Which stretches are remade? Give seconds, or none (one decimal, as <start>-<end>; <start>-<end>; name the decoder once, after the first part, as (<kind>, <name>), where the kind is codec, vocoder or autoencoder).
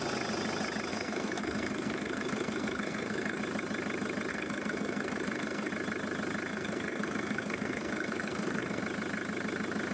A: 0.9-3.4 (codec, SNAC); 4.3-5.7; 6.5-8.8